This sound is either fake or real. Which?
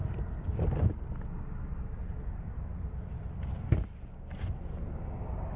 real